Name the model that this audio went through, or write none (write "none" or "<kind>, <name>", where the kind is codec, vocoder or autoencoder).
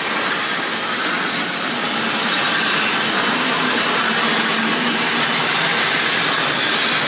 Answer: none